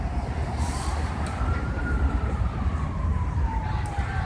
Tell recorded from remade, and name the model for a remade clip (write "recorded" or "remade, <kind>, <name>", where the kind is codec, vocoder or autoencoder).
remade, vocoder, BigVGAN v2